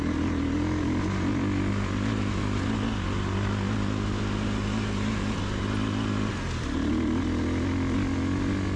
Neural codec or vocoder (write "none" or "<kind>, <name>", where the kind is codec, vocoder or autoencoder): none